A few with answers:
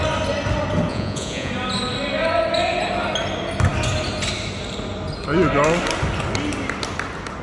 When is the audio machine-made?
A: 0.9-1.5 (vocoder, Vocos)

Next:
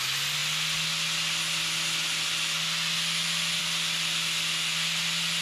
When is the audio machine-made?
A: none